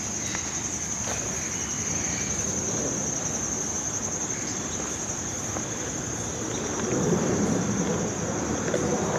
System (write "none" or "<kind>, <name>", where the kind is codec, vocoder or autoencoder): none